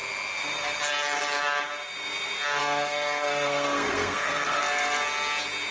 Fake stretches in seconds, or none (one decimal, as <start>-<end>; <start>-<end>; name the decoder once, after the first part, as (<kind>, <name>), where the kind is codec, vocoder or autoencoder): 2.6-4.6 (codec, SNAC)